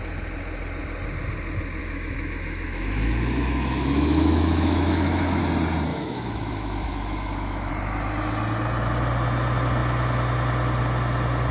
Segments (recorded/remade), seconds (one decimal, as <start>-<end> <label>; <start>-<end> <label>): 0.0-1.8 recorded; 1.8-5.4 remade; 5.4-5.9 recorded; 5.9-7.7 remade; 7.7-11.5 recorded